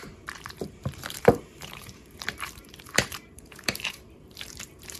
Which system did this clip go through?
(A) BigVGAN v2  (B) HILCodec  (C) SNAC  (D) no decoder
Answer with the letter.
A